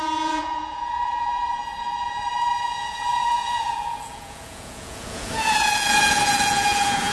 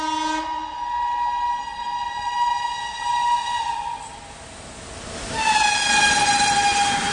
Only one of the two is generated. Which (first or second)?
first